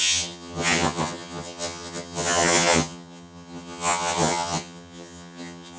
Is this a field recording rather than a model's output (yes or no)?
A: no